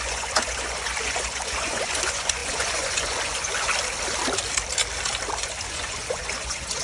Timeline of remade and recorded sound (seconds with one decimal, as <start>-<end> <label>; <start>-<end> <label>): 0.0-3.7 remade; 3.7-5.4 recorded; 5.4-6.8 remade